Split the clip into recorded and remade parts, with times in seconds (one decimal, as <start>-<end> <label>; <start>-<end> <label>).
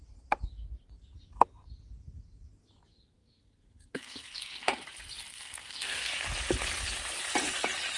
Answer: 0.0-2.9 recorded; 2.9-4.8 remade; 4.8-5.3 recorded; 5.3-6.1 remade; 6.1-8.0 recorded